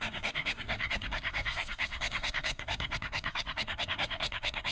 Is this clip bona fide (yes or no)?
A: no